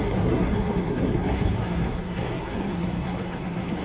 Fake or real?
fake